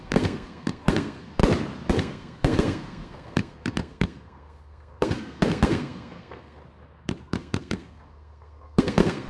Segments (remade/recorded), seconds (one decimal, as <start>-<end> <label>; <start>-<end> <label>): 0.0-1.4 remade; 1.4-1.9 recorded; 1.9-6.6 remade; 6.6-7.2 recorded; 7.2-9.3 remade